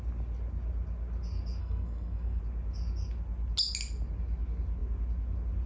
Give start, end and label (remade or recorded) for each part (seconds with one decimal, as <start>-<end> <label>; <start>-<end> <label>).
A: 0.0-1.6 recorded; 1.6-2.4 remade; 2.4-5.7 recorded